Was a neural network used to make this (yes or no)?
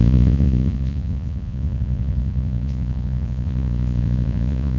yes